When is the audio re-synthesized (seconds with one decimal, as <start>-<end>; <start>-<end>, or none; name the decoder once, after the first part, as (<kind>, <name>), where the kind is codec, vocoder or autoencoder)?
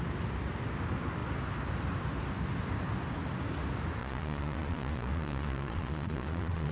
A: 4.0-6.7 (vocoder, Vocos)